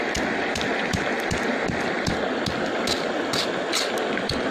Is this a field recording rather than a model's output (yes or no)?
yes